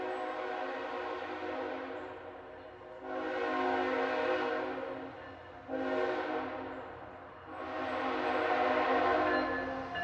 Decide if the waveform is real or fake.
real